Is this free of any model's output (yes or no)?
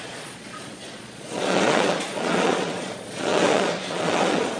no